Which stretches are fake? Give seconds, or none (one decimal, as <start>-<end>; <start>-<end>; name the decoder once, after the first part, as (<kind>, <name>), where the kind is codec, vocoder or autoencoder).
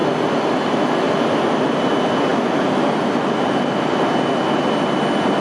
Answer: none